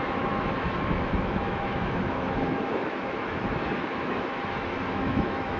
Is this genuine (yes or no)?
no